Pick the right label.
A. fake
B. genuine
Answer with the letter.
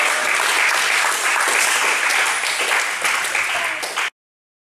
B